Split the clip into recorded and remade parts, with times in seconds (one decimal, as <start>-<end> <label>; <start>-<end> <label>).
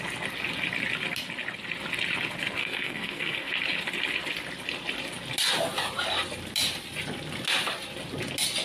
0.0-2.6 recorded; 2.6-3.5 remade; 3.5-8.6 recorded